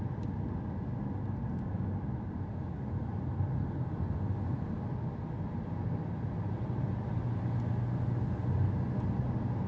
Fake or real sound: real